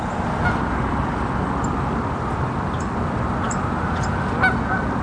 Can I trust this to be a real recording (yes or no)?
yes